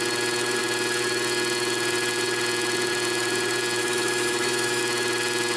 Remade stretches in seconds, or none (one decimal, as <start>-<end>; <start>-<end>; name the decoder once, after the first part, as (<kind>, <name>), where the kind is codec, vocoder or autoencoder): 3.8-4.8 (autoencoder, DAC-VAE)